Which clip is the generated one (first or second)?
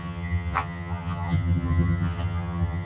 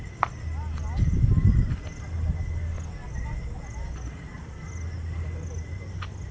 first